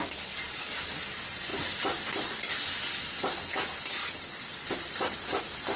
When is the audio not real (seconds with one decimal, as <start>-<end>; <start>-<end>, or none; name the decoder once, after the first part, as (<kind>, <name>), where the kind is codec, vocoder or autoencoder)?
1.5-2.6 (vocoder, BigVGAN v2); 4.0-4.6